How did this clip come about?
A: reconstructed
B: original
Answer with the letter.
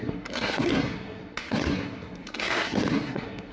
A